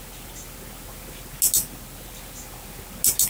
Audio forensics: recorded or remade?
recorded